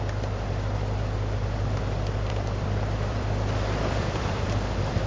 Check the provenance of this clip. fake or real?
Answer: fake